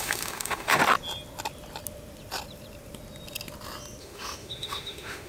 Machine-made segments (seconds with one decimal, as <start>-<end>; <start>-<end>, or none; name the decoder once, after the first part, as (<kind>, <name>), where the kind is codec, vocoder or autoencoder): 0.0-0.8 (autoencoder, DAC-VAE); 4.0-5.3